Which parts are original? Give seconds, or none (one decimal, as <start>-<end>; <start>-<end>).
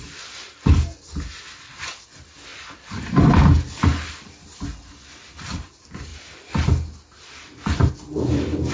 0.0-2.5; 3.0-6.1; 7.9-8.7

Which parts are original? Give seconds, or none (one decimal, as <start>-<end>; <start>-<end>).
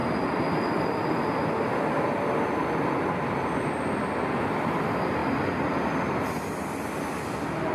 1.5-7.7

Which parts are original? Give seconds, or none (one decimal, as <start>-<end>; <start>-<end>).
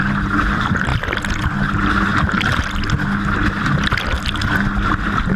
0.0-5.4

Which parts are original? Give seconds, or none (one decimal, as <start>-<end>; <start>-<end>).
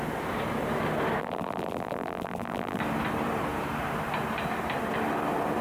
0.0-1.2; 2.8-5.6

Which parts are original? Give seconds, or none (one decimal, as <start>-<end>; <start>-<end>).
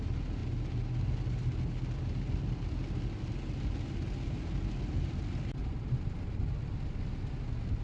0.0-7.8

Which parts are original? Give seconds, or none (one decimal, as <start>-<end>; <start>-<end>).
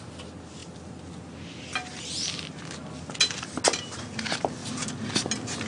0.0-4.6; 5.3-5.7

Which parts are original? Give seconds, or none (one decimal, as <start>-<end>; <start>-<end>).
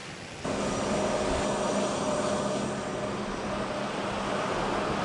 0.0-5.0